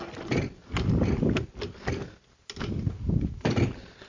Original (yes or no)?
yes